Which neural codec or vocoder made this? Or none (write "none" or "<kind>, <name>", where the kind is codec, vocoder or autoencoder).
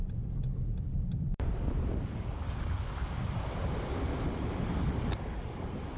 vocoder, BigVGAN v2